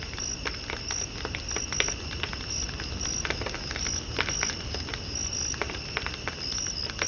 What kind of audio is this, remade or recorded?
recorded